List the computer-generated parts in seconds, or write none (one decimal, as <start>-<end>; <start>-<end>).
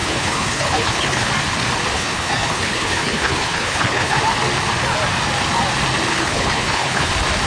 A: 0.0-1.3; 1.9-4.2; 6.1-7.1